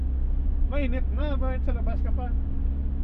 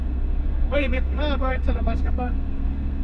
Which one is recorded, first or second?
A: first